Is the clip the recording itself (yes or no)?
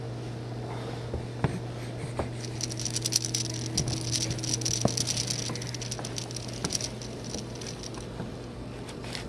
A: yes